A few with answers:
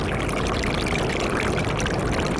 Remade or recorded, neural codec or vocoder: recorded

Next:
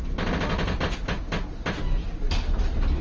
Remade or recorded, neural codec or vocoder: recorded